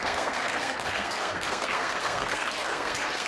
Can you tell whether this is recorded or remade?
remade